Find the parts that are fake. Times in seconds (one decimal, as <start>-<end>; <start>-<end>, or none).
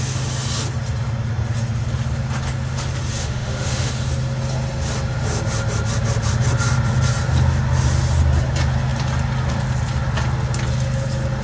3.2-3.9